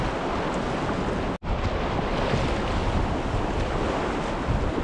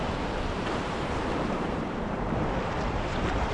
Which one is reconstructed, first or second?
second